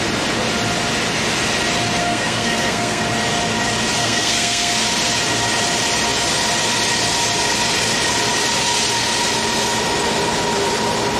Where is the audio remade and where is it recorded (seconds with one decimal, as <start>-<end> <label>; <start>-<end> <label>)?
0.0-2.0 recorded; 2.0-3.0 remade; 3.0-4.0 recorded; 4.0-4.7 remade; 4.7-11.2 recorded